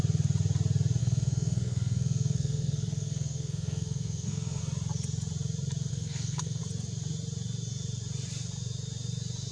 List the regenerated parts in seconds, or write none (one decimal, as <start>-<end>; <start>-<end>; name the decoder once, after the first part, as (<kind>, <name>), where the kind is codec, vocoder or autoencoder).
1.0-4.6 (codec, SNAC); 5.9-6.6